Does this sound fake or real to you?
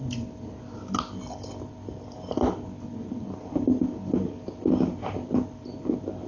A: real